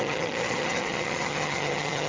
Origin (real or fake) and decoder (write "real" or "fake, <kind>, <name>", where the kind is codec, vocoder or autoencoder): fake, vocoder, HiFi-GAN